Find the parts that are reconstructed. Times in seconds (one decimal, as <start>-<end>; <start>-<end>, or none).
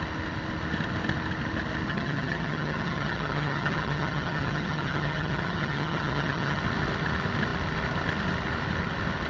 1.9-6.6